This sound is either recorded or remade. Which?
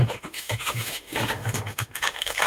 remade